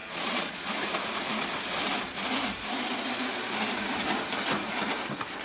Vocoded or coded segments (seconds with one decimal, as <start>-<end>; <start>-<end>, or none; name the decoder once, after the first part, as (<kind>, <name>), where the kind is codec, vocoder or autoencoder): 0.0-0.6 (vocoder, Vocos)